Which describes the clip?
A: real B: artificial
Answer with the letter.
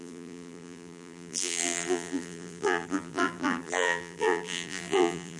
B